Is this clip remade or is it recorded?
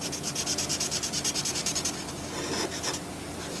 recorded